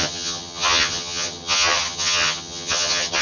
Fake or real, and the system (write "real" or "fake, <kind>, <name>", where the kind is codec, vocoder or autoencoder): fake, vocoder, HiFi-GAN